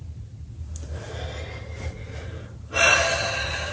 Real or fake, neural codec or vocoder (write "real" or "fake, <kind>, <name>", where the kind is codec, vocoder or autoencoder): real